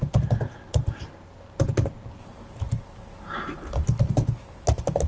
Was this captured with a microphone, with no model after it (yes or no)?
yes